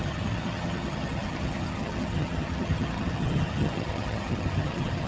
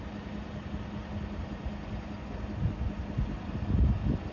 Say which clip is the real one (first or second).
second